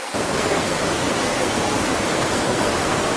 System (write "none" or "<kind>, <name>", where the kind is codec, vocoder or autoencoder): codec, SNAC